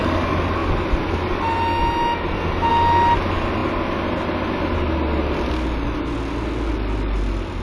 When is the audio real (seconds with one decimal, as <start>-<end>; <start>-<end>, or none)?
0.0-7.6